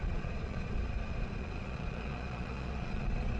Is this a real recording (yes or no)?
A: no